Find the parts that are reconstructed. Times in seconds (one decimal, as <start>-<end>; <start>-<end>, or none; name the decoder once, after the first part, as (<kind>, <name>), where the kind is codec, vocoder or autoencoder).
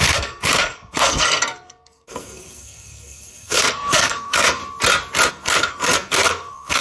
0.0-4.6 (codec, SNAC); 5.3-6.8